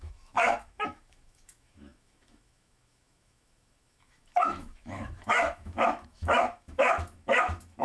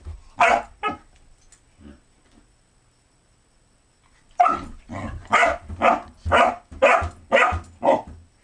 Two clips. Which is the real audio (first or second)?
second